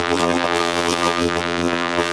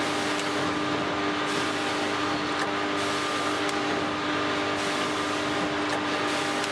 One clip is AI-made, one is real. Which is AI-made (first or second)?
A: first